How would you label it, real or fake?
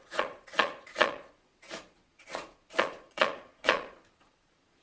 fake